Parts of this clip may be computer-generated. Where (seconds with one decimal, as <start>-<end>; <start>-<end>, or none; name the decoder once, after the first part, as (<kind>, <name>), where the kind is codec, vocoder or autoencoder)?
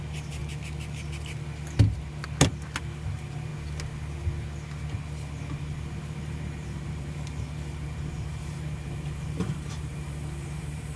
0.0-0.4 (vocoder, BigVGAN v2); 2.8-3.5; 6.0-11.0